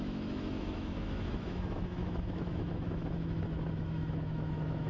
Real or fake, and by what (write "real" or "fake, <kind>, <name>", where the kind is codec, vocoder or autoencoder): fake, autoencoder, DAC-VAE